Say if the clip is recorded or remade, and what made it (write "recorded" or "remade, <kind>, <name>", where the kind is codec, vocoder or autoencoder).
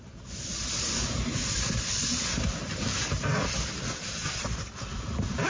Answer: remade, vocoder, BigVGAN v2